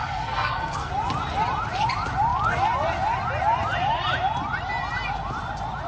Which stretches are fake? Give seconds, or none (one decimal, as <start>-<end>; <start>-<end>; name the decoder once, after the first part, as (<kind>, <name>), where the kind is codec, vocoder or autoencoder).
0.0-0.9 (codec, SNAC)